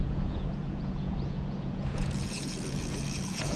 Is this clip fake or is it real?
fake